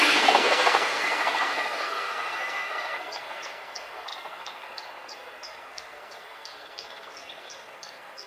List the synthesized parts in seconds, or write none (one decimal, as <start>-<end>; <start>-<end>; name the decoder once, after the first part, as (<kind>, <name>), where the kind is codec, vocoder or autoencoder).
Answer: 0.0-8.3 (codec, SNAC)